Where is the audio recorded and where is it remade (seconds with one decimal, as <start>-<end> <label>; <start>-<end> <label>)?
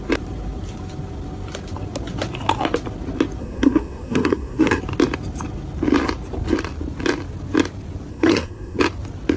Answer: 0.0-3.4 recorded; 3.4-4.8 remade; 4.8-8.1 recorded; 8.1-8.8 remade; 8.8-9.4 recorded